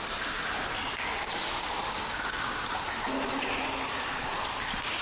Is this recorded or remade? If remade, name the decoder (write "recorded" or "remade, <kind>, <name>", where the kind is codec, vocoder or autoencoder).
recorded